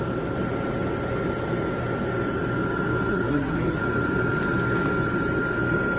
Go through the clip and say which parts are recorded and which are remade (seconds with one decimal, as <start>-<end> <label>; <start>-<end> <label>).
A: 0.0-3.1 recorded; 3.1-3.8 remade; 3.8-6.0 recorded